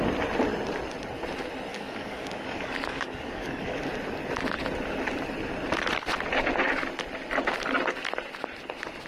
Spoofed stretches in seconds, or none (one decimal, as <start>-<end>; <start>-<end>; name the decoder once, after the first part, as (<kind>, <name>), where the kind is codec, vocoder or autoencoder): 1.7-3.8 (codec, DAC)